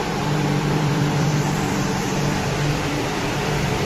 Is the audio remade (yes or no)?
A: yes